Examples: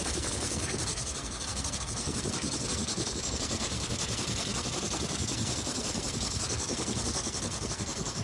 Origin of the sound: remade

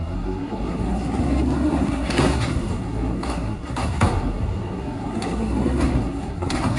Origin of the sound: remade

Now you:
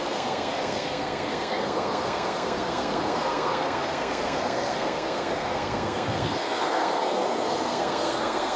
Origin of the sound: remade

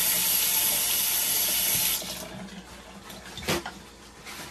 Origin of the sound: recorded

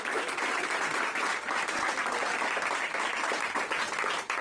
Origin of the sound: recorded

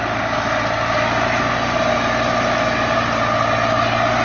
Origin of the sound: recorded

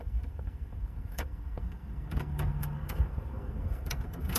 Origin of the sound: remade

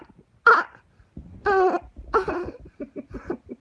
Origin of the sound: recorded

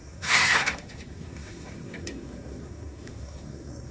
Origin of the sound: remade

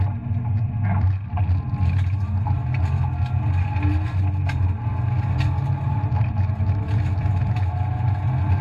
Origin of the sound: recorded